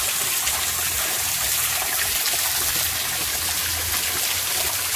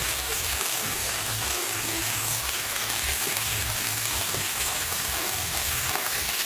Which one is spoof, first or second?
second